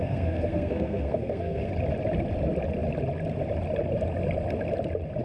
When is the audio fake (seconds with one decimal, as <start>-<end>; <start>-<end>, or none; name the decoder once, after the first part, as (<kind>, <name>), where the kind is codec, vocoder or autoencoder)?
0.0-1.7 (codec, SNAC)